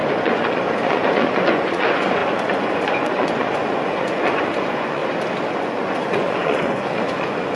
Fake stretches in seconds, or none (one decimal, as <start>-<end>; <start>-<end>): 0.0-5.0; 5.5-7.6